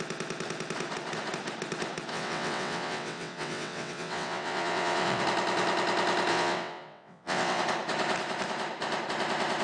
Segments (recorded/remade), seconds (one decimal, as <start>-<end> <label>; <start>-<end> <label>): 0.0-2.1 recorded; 2.1-5.2 remade; 5.2-6.3 recorded; 6.3-7.6 remade; 7.6-9.6 recorded